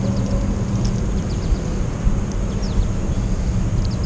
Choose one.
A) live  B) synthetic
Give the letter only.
A